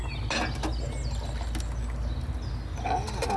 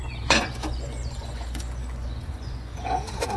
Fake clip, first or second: second